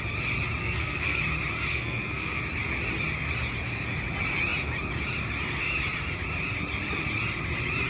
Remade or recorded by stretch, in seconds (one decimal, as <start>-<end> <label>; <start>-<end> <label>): 0.0-0.6 recorded; 0.6-1.2 remade; 1.2-1.7 recorded; 1.7-2.4 remade; 2.4-7.9 recorded